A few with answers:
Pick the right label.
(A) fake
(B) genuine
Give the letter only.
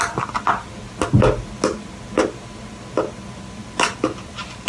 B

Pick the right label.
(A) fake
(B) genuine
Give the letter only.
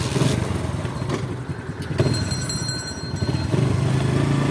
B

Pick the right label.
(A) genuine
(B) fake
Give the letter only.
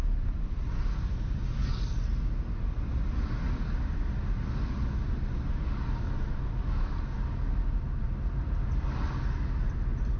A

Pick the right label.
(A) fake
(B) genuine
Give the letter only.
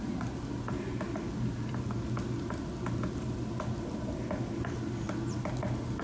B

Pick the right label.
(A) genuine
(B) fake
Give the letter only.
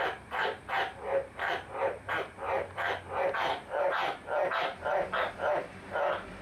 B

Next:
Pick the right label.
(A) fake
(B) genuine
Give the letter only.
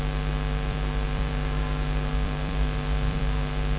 A